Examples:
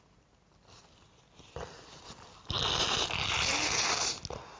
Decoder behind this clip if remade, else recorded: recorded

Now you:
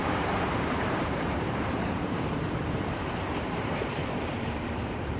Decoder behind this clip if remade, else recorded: remade, vocoder, BigVGAN v2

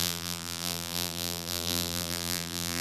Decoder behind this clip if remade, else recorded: remade, vocoder, BigVGAN v2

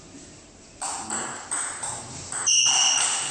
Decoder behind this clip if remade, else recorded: remade, vocoder, BigVGAN v2